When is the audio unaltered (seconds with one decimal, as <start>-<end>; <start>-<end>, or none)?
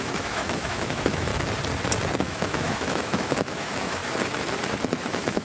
1.3-2.1; 4.0-5.0